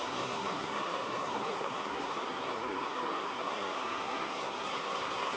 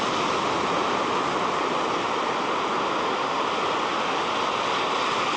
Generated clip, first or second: first